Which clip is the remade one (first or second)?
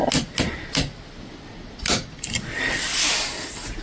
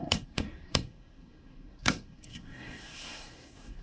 second